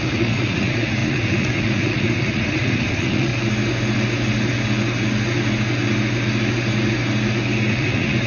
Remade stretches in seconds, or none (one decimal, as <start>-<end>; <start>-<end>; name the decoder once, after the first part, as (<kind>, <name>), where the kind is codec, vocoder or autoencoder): 0.0-3.3 (vocoder, Vocos); 7.7-8.3

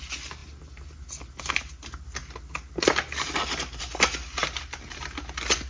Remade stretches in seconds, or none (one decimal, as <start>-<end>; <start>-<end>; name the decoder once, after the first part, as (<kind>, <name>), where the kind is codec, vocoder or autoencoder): none

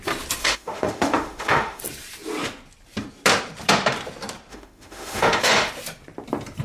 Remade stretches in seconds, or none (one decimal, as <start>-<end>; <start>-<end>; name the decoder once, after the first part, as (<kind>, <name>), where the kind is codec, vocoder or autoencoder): 0.4-1.8 (autoencoder, DAC-VAE); 4.5-5.7

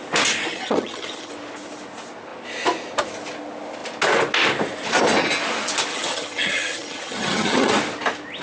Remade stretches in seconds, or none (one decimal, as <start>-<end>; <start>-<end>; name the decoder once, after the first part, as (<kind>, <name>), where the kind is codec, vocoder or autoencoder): 0.5-1.3 (vocoder, HiFi-GAN); 5.9-7.7

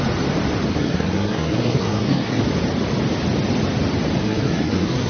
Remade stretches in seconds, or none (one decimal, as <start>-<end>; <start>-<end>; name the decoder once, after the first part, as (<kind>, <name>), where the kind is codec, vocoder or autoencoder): 0.7-2.4 (codec, SNAC); 4.2-5.1

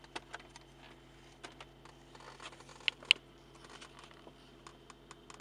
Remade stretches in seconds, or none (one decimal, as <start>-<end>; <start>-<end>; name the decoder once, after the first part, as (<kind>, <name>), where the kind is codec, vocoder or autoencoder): none

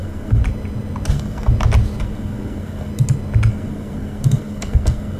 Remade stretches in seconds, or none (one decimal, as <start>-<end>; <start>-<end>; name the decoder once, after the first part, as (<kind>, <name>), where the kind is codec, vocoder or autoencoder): 0.0-0.4 (codec, SNAC); 1.1-1.5; 2.0-2.9; 3.5-5.2